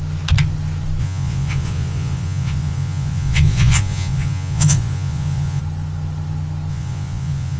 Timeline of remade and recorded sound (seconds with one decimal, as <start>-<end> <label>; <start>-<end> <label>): 0.0-1.0 recorded; 1.0-5.6 remade; 5.6-6.7 recorded; 6.7-7.6 remade